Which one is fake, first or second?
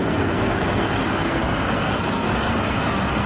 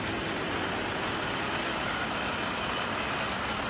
first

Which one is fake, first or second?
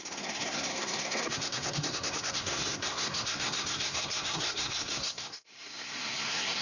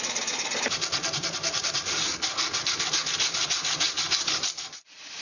first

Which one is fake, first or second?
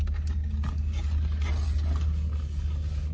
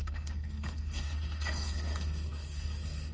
second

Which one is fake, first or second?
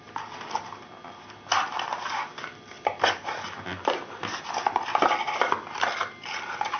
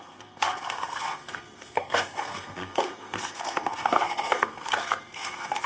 second